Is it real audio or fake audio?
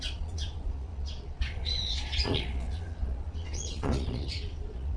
fake